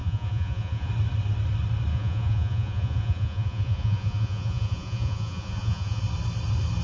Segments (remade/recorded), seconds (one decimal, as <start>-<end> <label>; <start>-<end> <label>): 0.0-0.9 remade; 0.9-1.9 recorded; 1.9-6.0 remade; 6.0-6.8 recorded